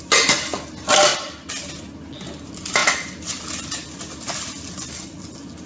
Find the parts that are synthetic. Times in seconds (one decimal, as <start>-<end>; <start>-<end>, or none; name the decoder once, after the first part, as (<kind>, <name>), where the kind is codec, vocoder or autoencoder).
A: none